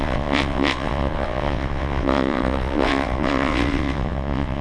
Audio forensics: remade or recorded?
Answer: remade